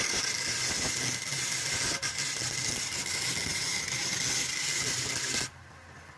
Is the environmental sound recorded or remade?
recorded